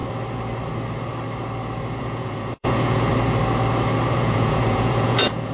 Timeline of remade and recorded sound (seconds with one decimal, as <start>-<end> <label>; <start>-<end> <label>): 0.0-2.0 recorded; 2.0-3.1 remade; 3.1-4.2 recorded; 4.2-5.5 remade